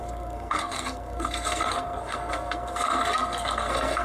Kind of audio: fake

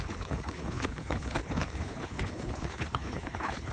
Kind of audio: fake